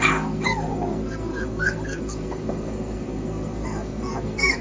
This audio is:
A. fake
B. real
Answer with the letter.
A